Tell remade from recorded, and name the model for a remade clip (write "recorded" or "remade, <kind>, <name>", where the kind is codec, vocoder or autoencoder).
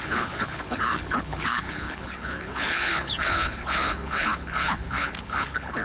remade, codec, HILCodec